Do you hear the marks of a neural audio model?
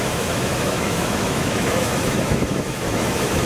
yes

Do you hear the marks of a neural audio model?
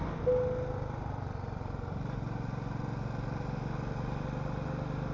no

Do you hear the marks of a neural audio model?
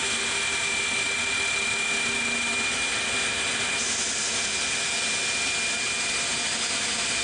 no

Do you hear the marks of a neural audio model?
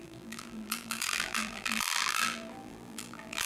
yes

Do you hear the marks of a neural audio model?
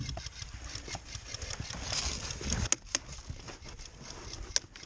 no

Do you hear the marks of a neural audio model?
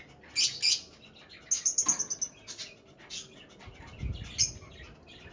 no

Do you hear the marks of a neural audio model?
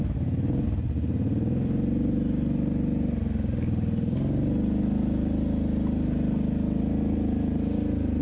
no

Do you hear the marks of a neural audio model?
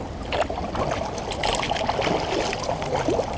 no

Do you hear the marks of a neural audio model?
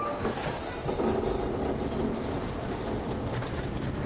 no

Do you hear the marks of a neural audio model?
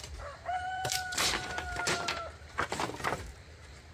yes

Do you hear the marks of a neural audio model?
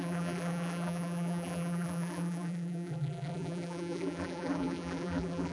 yes